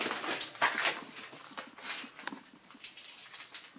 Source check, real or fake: real